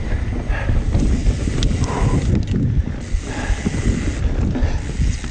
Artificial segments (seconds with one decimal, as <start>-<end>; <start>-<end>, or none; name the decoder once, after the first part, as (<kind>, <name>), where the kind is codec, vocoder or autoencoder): none